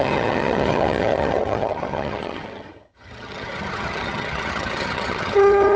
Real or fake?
fake